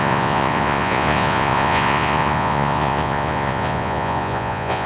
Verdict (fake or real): fake